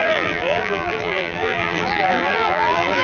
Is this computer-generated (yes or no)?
yes